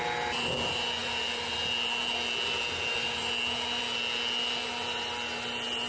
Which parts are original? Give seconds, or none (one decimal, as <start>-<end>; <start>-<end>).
0.0-5.9